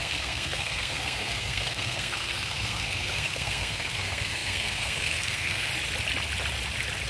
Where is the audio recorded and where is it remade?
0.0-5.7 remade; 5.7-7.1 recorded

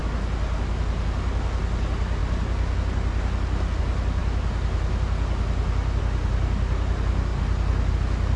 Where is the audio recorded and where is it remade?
0.0-8.4 recorded

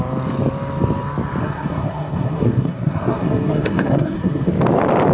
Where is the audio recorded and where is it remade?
0.0-1.4 recorded; 1.4-4.5 remade; 4.5-5.1 recorded

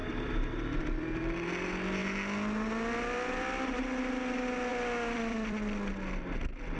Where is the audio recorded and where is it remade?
0.0-0.8 remade; 0.8-4.7 recorded; 4.7-5.9 remade; 5.9-6.8 recorded

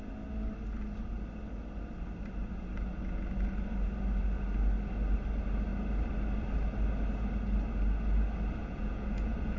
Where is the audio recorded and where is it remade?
0.0-8.6 recorded; 8.6-9.6 remade

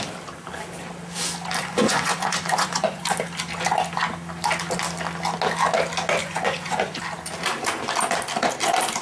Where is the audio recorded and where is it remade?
0.0-1.6 recorded; 1.6-3.0 remade; 3.0-6.2 recorded; 6.2-7.0 remade; 7.0-9.0 recorded